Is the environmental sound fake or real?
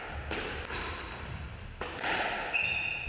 real